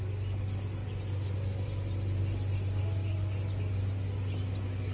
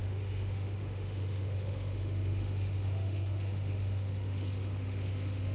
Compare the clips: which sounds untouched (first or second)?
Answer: first